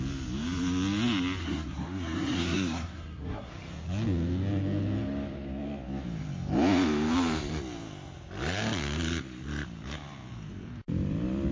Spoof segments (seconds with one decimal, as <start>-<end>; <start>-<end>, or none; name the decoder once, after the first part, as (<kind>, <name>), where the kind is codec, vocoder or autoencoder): 1.4-3.5 (codec, SNAC)